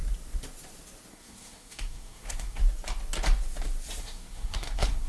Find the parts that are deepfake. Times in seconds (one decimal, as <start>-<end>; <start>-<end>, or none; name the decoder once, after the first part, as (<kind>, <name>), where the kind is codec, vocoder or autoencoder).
1.1-2.6 (codec, SNAC); 4.0-5.1